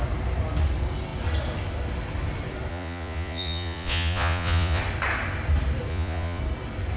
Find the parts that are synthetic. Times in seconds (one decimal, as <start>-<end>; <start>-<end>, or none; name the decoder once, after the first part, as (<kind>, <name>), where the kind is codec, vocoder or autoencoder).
2.7-4.8 (vocoder, Vocos); 5.9-6.4